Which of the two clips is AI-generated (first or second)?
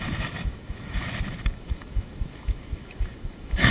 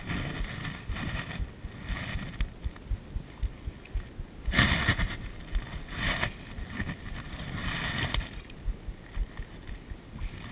first